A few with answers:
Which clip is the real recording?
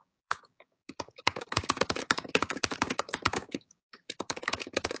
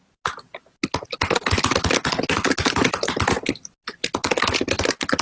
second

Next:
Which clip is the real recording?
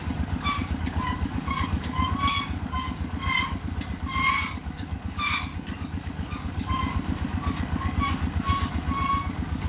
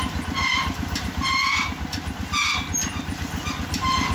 second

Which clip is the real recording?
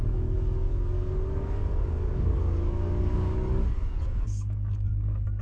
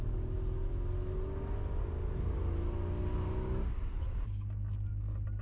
second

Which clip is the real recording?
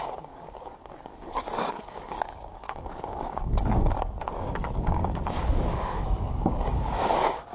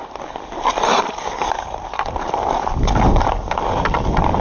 second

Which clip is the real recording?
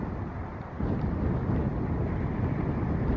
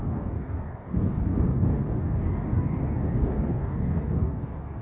first